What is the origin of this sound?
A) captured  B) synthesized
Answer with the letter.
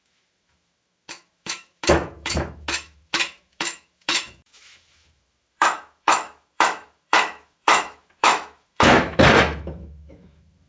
B